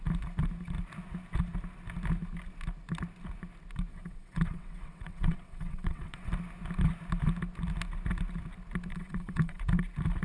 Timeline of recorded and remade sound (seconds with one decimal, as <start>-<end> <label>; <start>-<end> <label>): 0.0-3.9 recorded; 3.9-6.3 remade; 6.3-8.9 recorded; 8.9-9.6 remade; 9.6-10.2 recorded